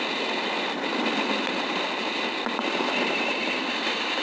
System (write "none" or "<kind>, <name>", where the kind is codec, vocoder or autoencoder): none